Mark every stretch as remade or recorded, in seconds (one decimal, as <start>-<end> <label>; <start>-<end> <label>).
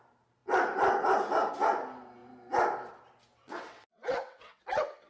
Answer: 0.0-3.4 recorded; 3.4-5.1 remade